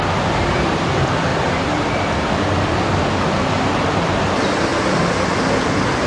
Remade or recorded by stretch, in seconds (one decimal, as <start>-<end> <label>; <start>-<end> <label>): 0.0-1.3 recorded; 1.3-2.3 remade; 2.3-6.1 recorded